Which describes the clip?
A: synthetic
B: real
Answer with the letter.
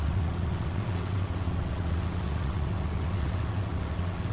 A